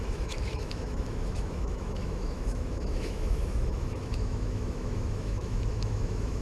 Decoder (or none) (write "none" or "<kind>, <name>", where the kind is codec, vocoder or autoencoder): autoencoder, DAC-VAE